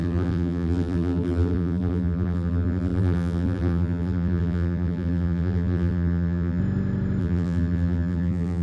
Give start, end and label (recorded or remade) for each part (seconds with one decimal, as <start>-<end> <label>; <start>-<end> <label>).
0.0-6.6 remade; 6.6-7.2 recorded; 7.2-8.6 remade